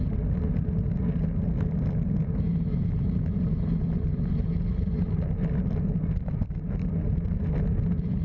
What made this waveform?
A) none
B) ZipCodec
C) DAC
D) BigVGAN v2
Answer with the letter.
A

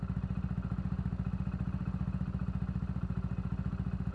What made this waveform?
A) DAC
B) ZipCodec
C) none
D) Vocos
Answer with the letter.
C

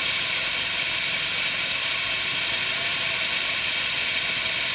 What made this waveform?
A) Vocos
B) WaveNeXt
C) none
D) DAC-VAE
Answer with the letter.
C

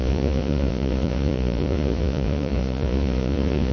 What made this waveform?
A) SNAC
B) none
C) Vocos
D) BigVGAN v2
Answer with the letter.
C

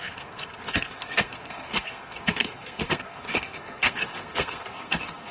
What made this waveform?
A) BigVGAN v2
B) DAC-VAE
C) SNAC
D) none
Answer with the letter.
C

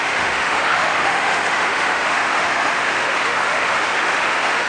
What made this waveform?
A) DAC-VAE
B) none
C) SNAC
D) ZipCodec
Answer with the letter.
A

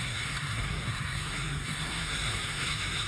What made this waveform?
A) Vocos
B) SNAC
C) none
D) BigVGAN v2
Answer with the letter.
B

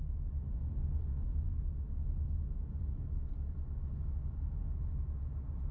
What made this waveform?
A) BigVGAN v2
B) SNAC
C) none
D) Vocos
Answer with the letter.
C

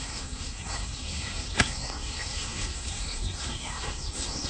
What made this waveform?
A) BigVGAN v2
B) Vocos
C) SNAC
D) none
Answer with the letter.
C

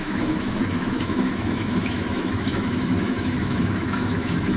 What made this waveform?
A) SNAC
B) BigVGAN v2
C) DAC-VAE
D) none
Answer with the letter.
C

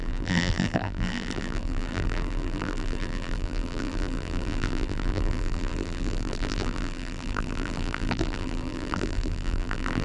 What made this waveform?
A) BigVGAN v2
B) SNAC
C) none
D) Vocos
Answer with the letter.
A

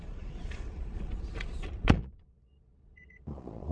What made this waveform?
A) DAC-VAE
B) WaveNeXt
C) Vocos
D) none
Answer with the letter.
C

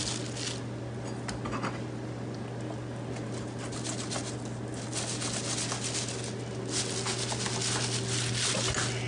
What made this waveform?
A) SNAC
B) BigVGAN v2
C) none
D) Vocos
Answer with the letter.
C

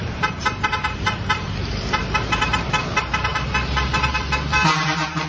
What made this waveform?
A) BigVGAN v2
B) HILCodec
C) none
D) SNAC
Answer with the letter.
A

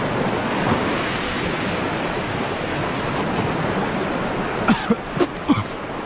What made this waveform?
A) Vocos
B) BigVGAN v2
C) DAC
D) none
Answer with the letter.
D